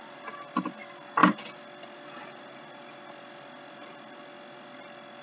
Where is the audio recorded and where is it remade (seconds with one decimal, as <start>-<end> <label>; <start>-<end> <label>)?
0.0-5.2 recorded